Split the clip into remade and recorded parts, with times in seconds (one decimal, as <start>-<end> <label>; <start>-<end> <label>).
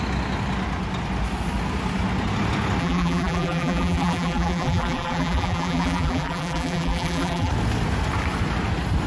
0.0-2.8 recorded; 2.8-7.5 remade; 7.5-9.1 recorded